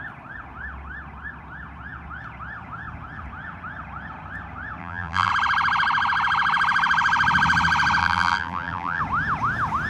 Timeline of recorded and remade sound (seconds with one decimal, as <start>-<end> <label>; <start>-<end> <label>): 0.0-4.8 recorded; 4.8-5.3 remade; 5.3-8.0 recorded; 8.0-9.0 remade; 9.0-9.9 recorded

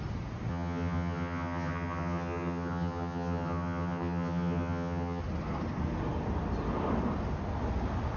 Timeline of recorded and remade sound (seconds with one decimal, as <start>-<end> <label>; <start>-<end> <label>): 0.0-0.5 recorded; 0.5-5.2 remade; 5.2-8.2 recorded